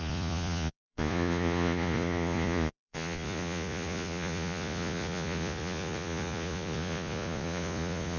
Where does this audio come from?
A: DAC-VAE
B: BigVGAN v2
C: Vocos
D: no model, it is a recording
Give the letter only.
C